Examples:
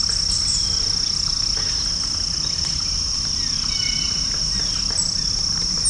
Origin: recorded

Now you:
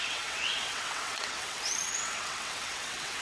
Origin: remade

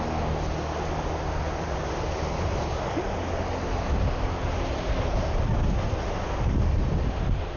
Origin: recorded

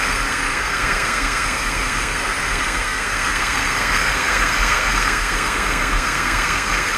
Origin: remade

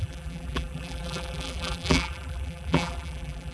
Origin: remade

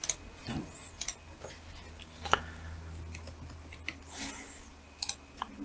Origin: recorded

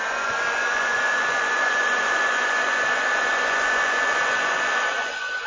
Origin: remade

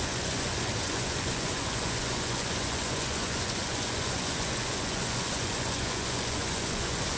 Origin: remade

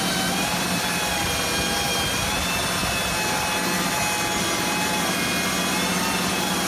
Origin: recorded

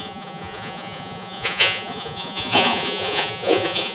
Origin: remade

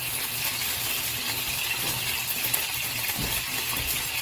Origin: recorded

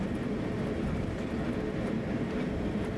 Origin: remade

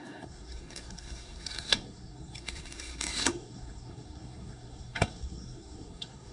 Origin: remade